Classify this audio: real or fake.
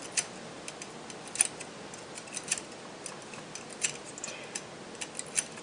real